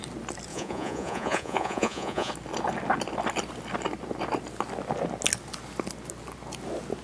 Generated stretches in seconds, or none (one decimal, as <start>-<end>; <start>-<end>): 0.5-2.3